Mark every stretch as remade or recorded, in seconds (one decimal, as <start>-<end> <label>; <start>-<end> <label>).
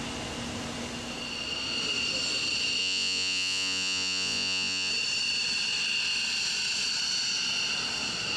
0.0-2.8 recorded; 2.8-4.9 remade; 4.9-8.4 recorded